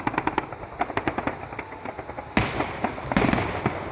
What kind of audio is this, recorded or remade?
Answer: recorded